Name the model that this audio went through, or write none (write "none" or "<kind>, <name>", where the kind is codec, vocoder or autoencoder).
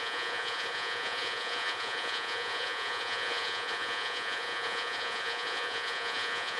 vocoder, Vocos